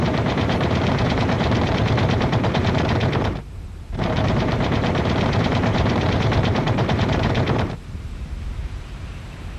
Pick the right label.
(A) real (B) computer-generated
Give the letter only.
B